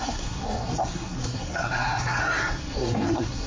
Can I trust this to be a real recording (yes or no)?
no